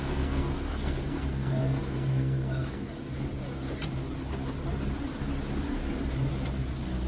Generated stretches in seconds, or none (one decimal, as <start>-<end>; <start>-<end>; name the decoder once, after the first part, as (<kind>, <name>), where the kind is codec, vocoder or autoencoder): 0.0-2.8 (codec, SNAC)